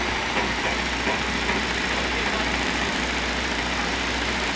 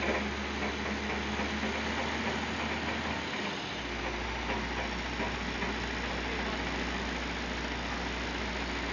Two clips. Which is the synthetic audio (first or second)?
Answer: first